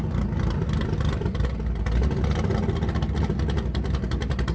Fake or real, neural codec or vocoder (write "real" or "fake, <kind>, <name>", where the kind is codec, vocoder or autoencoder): real